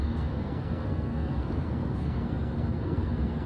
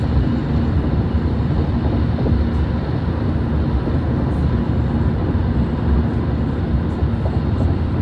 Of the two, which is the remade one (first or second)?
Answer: first